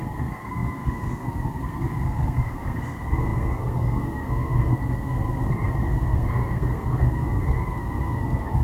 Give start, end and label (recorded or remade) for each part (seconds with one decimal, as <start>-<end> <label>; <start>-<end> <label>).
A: 0.0-8.6 remade